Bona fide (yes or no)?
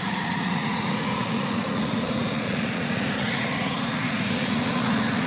no